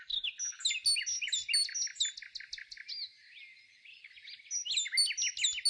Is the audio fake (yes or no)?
no